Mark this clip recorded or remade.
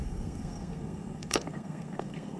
remade